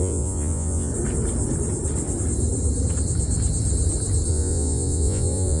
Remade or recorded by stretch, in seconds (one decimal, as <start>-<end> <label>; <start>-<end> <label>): 0.0-0.9 remade; 0.9-4.3 recorded; 4.3-5.6 remade